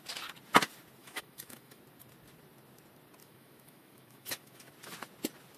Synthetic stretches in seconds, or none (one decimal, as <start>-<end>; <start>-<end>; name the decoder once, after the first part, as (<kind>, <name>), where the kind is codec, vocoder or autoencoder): 1.0-1.8 (autoencoder, DAC-VAE); 3.2-4.7